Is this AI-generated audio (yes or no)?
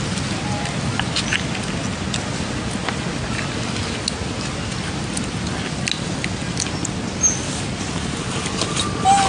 no